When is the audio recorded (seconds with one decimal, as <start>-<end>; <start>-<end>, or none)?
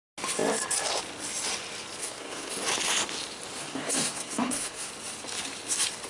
0.0-2.0; 2.5-3.6; 4.9-6.1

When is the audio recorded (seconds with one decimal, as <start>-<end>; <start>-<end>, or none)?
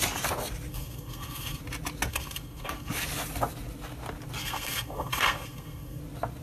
0.0-0.7; 1.6-2.1; 2.9-4.4; 6.0-6.4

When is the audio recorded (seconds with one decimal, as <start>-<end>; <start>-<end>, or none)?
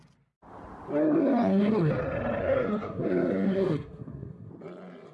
0.0-1.0; 1.9-2.4; 4.5-5.1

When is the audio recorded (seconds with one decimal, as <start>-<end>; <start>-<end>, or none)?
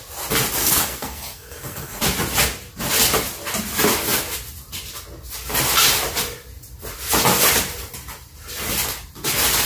0.0-0.6; 2.0-9.7